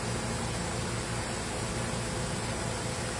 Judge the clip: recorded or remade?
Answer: recorded